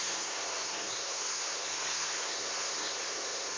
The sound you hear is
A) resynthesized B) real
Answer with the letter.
A